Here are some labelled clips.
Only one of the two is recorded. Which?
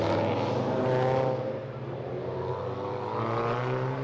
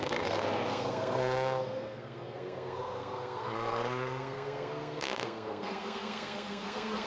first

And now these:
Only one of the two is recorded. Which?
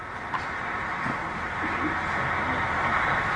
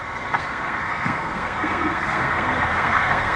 first